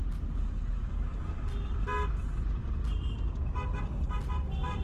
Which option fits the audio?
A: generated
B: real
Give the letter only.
B